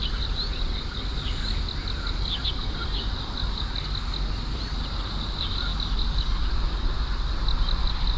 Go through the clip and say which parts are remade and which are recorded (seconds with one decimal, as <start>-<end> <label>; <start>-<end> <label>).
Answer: 0.0-8.2 recorded